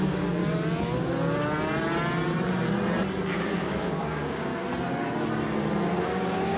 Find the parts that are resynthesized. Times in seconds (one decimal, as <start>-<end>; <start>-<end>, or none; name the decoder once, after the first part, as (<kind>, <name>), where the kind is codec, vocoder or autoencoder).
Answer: 0.0-0.4 (codec, DAC); 3.3-4.5; 6.0-6.6